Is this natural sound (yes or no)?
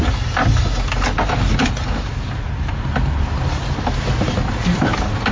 yes